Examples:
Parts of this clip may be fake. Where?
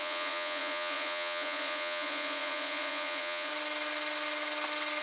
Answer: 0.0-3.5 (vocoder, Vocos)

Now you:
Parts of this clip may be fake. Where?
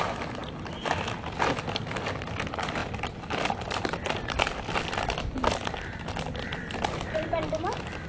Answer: none